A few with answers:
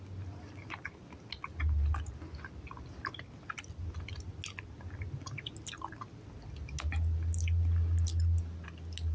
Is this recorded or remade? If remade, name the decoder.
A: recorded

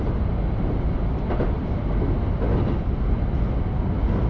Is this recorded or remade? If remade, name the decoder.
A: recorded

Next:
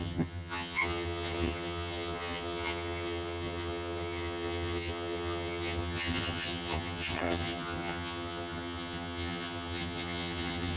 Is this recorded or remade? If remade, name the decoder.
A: remade, vocoder, HiFi-GAN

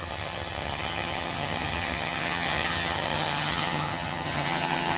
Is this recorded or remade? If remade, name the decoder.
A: remade, vocoder, HiFi-GAN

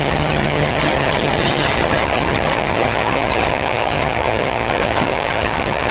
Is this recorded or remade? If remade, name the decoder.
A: remade, vocoder, HiFi-GAN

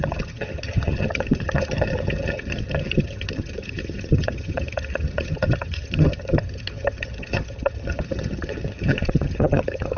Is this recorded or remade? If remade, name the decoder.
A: remade, vocoder, HiFi-GAN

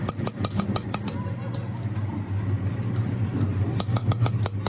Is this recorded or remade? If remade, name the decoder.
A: recorded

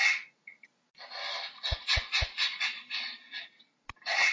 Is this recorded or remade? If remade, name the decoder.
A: recorded